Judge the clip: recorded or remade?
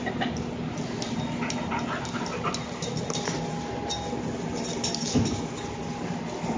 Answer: recorded